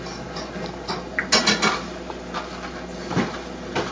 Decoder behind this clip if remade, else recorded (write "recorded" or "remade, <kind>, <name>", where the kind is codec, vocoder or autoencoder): recorded